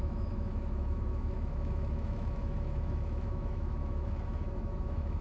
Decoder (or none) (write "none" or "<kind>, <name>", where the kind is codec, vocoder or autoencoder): autoencoder, DAC-VAE